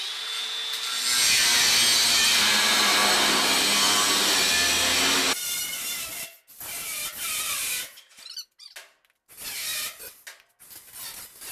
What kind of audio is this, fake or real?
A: real